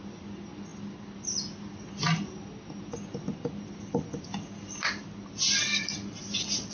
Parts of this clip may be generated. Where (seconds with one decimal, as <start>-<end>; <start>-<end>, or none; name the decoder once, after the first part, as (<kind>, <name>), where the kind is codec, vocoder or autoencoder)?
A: none